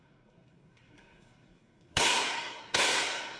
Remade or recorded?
remade